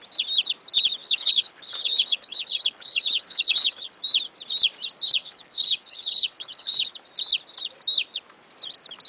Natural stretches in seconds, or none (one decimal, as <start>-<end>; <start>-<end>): 0.0-1.0; 4.0-5.2; 6.9-9.1